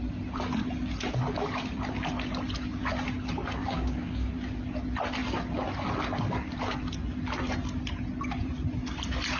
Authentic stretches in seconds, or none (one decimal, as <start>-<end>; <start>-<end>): 0.0-3.6; 4.3-9.4